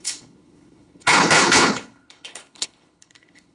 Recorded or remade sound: remade